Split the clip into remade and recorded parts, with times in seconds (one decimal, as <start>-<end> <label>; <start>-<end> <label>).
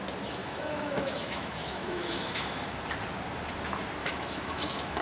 0.0-0.4 recorded; 0.4-2.8 remade; 2.8-4.0 recorded; 4.0-5.0 remade